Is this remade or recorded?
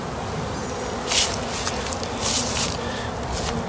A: recorded